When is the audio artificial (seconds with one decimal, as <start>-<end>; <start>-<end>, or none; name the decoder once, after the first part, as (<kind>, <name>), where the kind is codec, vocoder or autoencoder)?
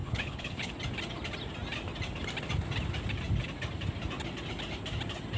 0.0-0.7 (codec, HILCodec)